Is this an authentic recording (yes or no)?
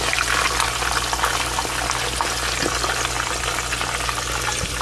yes